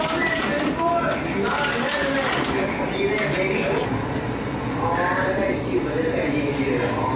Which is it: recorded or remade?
recorded